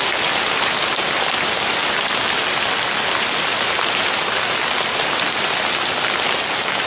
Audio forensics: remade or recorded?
recorded